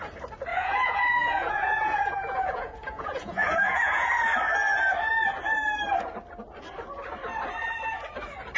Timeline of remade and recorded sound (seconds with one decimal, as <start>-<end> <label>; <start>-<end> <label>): 0.0-0.5 recorded; 0.5-4.1 remade; 4.1-8.6 recorded

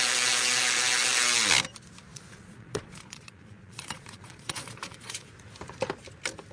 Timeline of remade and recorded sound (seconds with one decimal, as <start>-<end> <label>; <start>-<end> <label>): 0.0-2.1 recorded; 2.1-5.4 remade; 5.4-6.5 recorded

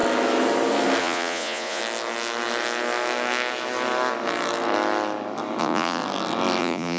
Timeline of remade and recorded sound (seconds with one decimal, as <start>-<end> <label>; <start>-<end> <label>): 0.0-1.0 recorded; 1.0-1.8 remade; 1.8-5.6 recorded; 5.6-6.0 remade; 6.0-6.6 recorded; 6.6-7.0 remade

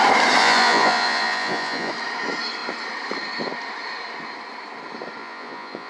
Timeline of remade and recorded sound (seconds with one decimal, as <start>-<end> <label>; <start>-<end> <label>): 0.0-0.4 recorded; 0.4-1.9 remade; 1.9-5.2 recorded; 5.2-5.9 remade